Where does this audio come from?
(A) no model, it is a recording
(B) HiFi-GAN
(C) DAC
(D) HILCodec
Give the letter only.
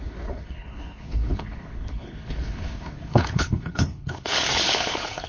D